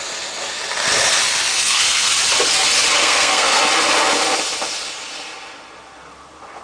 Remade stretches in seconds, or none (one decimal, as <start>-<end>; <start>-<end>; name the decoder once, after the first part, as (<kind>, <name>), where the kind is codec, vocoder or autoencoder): 1.5-2.1 (codec, SNAC); 3.0-3.6